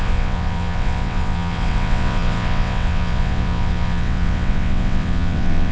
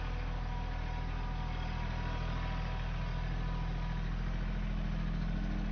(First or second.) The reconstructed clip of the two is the first